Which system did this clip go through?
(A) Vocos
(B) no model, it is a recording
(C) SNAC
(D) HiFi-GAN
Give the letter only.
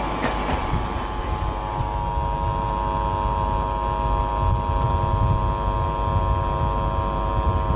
B